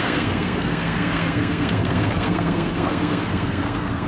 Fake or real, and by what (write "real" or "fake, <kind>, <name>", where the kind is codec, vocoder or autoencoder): fake, codec, SNAC